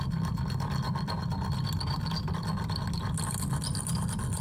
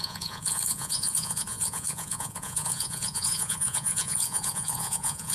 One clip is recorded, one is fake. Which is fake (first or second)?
second